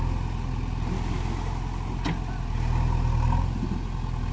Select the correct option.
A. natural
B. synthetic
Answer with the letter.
A